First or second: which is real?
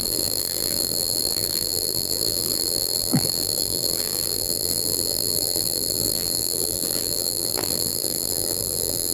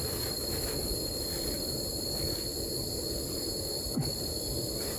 second